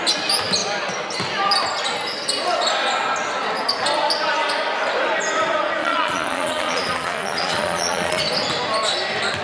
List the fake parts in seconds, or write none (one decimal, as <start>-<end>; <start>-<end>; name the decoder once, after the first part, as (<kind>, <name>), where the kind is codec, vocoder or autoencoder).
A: 5.8-8.2 (vocoder, Vocos)